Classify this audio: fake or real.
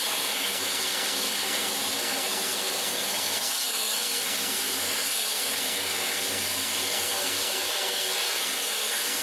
fake